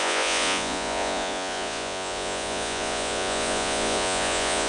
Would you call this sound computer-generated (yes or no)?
yes